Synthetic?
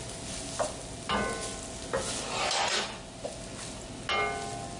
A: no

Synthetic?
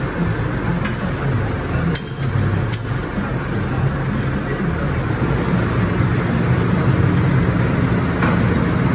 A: no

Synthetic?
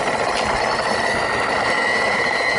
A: no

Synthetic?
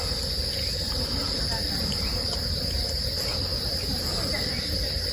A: no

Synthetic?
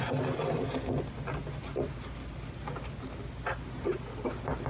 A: no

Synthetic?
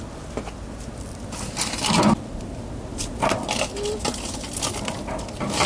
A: no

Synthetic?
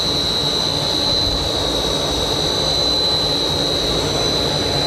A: no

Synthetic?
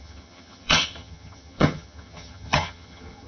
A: yes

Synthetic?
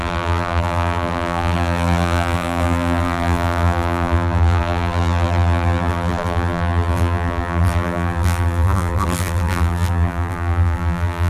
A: yes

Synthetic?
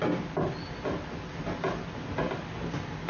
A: no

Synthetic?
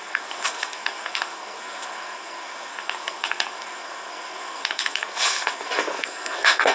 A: yes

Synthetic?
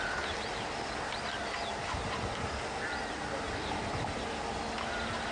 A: no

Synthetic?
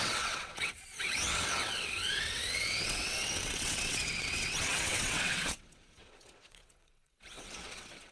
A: yes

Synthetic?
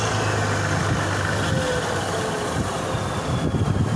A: no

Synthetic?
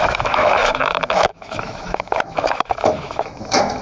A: yes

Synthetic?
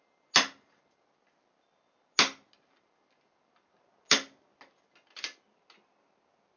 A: no